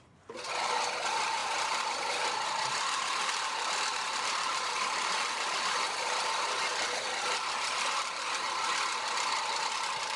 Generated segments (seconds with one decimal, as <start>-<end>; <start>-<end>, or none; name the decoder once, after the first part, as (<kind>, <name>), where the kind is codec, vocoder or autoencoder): 1.4-6.2 (vocoder, BigVGAN v2); 6.7-7.7